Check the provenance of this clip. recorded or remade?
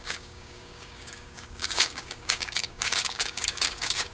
remade